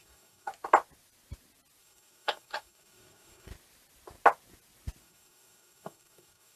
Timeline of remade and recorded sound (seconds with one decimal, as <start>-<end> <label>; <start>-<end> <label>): 0.0-0.5 remade; 0.5-1.8 recorded; 1.8-3.5 remade; 3.5-5.0 recorded; 5.0-6.6 remade